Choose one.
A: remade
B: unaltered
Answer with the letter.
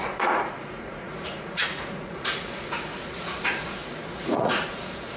A